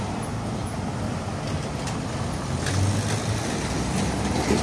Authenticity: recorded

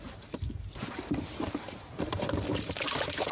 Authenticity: remade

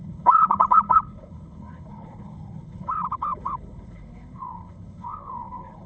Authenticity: remade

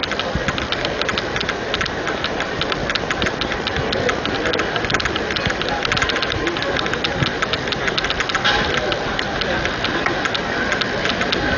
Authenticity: recorded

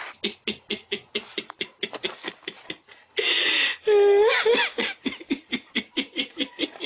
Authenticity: recorded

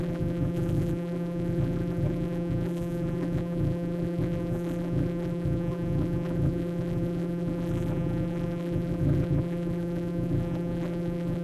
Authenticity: remade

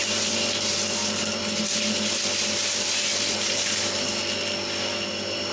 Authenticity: recorded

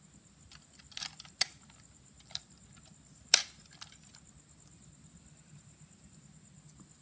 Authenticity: recorded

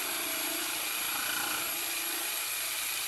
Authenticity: recorded